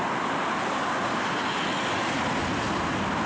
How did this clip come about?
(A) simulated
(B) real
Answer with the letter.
B